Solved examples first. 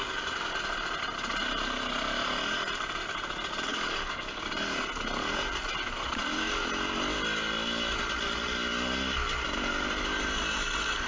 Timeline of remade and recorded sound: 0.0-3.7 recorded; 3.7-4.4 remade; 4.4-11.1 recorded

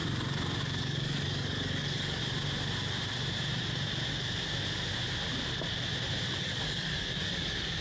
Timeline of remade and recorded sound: 0.0-0.6 recorded; 0.6-2.2 remade; 2.2-6.4 recorded; 6.4-7.8 remade